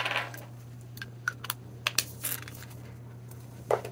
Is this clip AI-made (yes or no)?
no